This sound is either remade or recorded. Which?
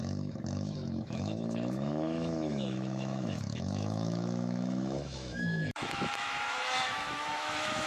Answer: remade